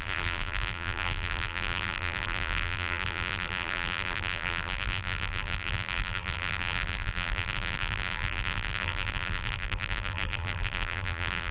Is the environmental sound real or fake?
fake